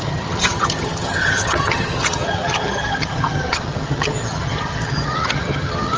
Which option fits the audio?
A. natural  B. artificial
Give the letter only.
B